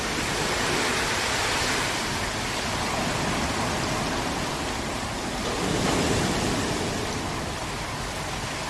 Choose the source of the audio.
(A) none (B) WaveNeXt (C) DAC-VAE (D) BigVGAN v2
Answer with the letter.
A